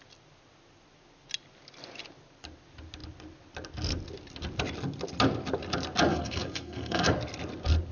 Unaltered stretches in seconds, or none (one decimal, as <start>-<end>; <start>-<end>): 0.0-6.1; 7.1-7.9